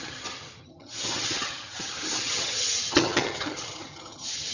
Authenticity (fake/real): fake